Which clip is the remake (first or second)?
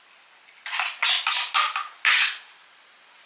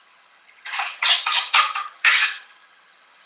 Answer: second